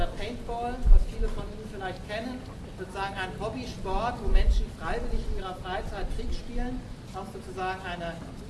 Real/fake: real